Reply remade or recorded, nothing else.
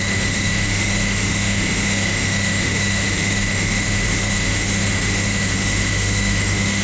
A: remade